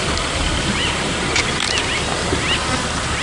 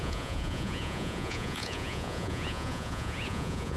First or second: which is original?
first